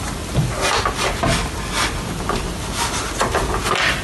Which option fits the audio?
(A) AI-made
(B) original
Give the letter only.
B